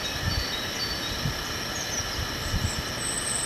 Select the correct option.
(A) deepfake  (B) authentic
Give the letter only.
B